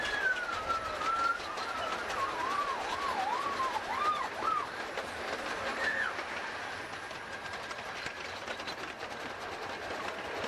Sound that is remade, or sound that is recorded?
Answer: recorded